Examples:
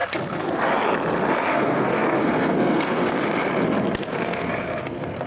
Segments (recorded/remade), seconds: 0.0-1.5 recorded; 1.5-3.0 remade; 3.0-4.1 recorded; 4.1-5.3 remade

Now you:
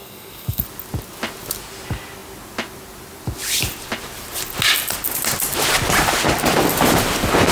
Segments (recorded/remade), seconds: 0.0-0.6 remade; 0.6-7.5 recorded